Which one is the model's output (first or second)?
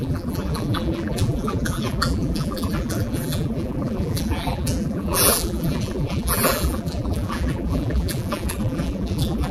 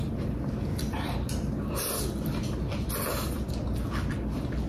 first